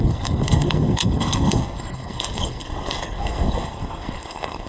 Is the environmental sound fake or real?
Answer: fake